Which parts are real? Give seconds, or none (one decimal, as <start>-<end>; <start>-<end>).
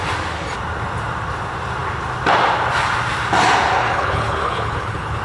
0.0-3.8